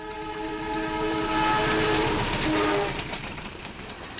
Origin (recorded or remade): remade